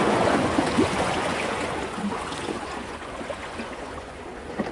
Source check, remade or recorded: remade